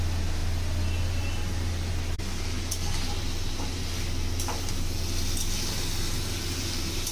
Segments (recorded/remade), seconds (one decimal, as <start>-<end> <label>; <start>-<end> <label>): 0.0-7.1 recorded